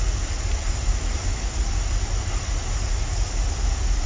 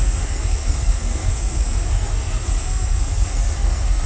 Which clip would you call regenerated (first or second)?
second